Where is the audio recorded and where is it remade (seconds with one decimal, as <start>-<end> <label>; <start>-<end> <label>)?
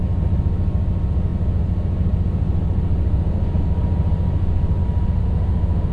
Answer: 0.0-5.2 recorded; 5.2-5.9 remade